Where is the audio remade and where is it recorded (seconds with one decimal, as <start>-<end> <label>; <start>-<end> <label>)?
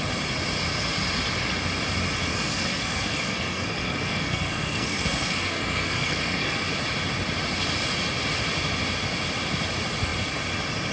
0.0-2.3 recorded; 2.3-6.7 remade; 6.7-10.9 recorded